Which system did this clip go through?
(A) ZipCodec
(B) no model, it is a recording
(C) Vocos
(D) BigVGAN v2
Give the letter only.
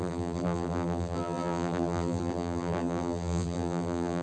D